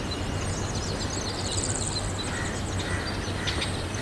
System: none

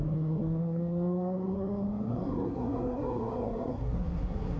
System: codec, SNAC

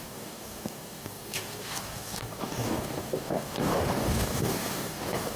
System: codec, DAC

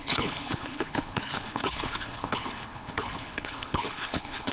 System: codec, HILCodec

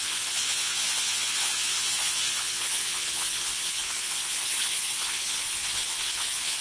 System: vocoder, Vocos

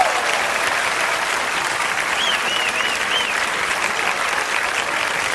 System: none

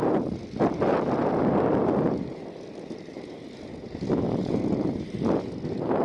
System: none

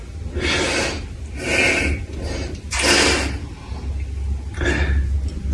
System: none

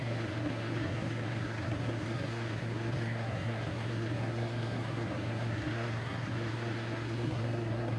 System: codec, SNAC